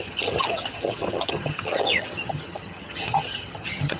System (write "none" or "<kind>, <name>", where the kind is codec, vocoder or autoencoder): vocoder, HiFi-GAN